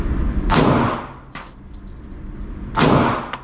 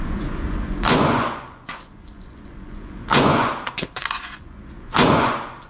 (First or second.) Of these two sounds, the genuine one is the first